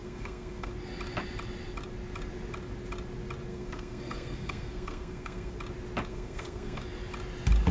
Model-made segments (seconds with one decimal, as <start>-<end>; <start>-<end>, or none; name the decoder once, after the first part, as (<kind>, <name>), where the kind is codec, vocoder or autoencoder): 0.0-0.7 (codec, SNAC); 3.5-5.6; 6.1-6.8